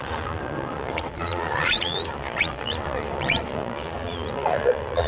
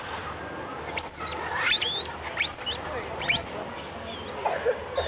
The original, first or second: second